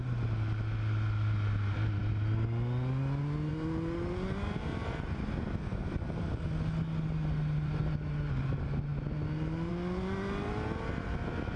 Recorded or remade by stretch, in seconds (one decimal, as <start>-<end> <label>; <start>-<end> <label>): 0.0-4.7 recorded; 4.7-5.4 remade; 5.4-11.6 recorded